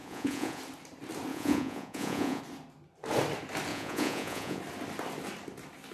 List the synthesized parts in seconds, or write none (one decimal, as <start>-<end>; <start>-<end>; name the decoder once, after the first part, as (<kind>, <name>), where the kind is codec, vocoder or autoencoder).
0.0-0.6 (vocoder, Vocos); 1.3-2.4; 3.7-4.6